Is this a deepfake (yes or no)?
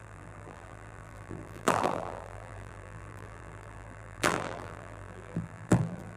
yes